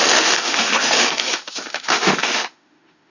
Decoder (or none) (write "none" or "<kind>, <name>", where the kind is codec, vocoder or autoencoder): autoencoder, DAC-VAE